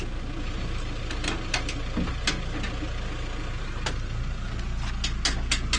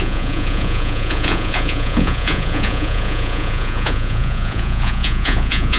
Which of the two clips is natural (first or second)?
first